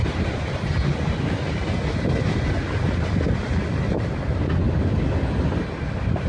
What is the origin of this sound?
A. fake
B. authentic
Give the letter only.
B